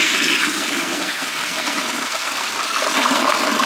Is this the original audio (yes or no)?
no